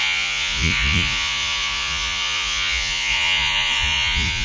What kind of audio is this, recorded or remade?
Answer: remade